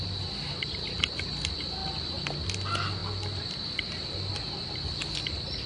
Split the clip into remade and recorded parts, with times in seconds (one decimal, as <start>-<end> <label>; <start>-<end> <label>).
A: 0.0-5.7 recorded